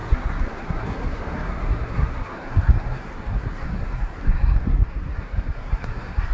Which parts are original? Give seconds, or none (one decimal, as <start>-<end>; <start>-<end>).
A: none